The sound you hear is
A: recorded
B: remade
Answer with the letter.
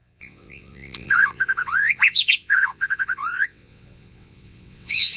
B